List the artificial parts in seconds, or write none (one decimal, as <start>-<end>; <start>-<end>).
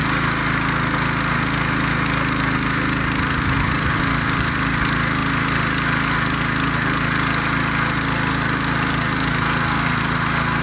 none